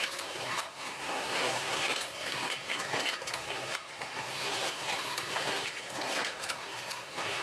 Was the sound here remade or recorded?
remade